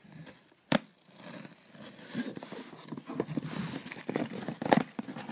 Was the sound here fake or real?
real